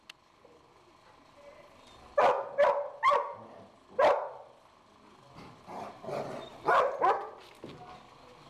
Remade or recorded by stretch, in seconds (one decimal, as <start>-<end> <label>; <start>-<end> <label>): 0.0-8.5 recorded